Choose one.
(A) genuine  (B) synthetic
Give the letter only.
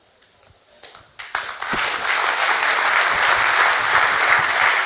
A